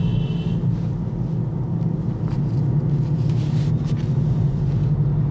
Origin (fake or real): real